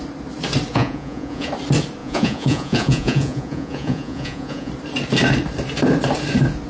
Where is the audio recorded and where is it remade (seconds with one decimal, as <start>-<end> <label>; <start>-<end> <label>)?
0.0-0.7 recorded; 0.7-1.5 remade; 1.5-2.0 recorded; 2.0-4.7 remade; 4.7-6.7 recorded